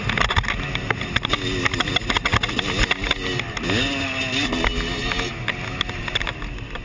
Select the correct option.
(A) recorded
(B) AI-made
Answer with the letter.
A